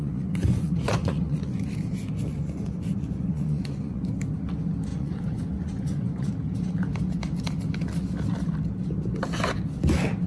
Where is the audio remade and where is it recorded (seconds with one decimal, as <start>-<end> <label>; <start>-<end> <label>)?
0.0-1.7 remade; 1.7-2.3 recorded; 2.3-4.0 remade; 4.0-4.9 recorded; 4.9-6.3 remade; 6.3-10.3 recorded